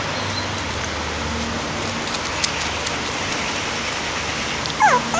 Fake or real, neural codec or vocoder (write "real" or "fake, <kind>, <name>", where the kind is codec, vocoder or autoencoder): real